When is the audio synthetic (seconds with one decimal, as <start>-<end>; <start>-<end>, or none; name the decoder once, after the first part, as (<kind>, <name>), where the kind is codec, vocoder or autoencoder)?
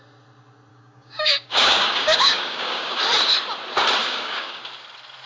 0.7-3.0 (codec, DAC); 4.0-4.6